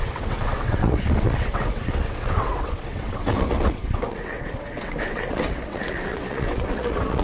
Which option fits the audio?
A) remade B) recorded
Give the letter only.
A